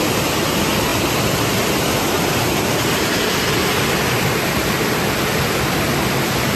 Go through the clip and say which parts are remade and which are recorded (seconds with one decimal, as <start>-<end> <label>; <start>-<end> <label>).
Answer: 0.0-6.6 recorded